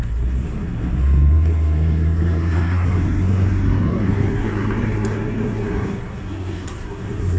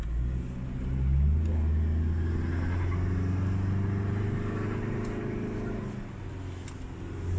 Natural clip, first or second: second